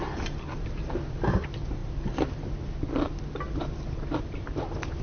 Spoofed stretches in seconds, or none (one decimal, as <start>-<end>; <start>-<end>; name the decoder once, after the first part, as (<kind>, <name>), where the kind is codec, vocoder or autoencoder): none